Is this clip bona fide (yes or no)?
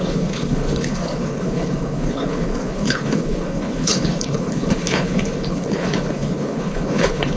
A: no